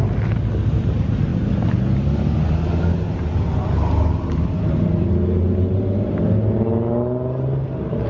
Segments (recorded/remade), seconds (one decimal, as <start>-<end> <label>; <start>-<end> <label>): 0.0-8.1 recorded